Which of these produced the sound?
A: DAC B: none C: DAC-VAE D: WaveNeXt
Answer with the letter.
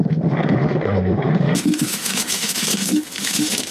C